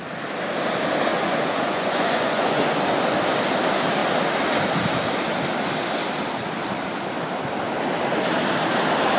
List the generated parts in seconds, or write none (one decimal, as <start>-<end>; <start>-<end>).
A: 1.1-2.8